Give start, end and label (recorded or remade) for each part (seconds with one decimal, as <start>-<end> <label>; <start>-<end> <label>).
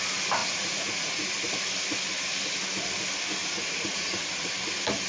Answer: 0.0-0.4 recorded; 0.4-1.4 remade; 1.4-3.4 recorded; 3.4-4.5 remade; 4.5-5.1 recorded